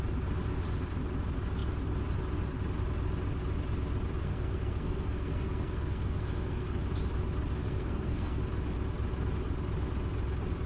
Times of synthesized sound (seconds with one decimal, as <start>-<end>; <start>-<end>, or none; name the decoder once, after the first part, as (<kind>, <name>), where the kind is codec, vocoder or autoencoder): 4.2-6.8 (codec, SNAC); 7.6-8.4

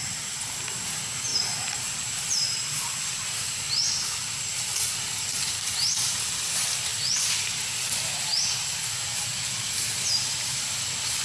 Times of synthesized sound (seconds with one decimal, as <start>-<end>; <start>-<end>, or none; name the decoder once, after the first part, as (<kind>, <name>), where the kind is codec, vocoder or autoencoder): none